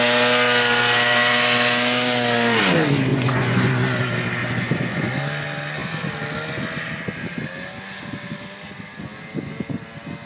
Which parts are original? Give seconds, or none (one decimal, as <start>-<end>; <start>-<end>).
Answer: 0.0-3.1; 3.7-4.4; 5.1-10.3